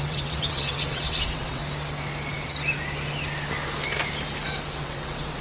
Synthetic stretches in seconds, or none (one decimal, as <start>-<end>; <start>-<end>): 0.0-1.6; 4.8-5.4